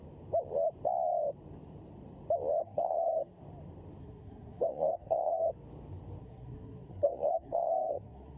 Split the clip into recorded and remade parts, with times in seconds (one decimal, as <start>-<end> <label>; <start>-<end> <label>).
0.0-2.6 recorded; 2.6-3.4 remade; 3.4-4.0 recorded; 4.0-5.5 remade; 5.5-6.2 recorded; 6.2-8.4 remade